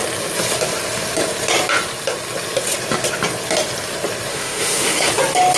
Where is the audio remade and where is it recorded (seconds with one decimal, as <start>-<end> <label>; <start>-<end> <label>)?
0.0-4.3 recorded; 4.3-5.1 remade; 5.1-5.6 recorded